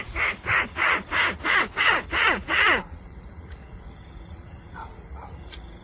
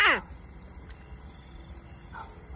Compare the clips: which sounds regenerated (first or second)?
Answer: first